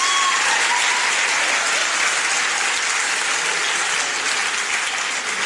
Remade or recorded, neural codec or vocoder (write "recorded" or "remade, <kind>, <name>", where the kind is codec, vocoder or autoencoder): recorded